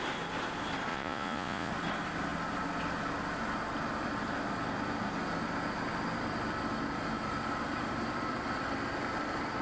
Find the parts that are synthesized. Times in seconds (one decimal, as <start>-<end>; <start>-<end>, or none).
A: 0.9-1.7